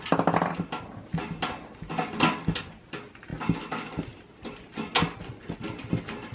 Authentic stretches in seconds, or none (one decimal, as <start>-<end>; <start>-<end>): 0.0-6.3